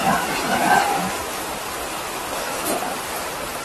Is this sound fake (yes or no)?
yes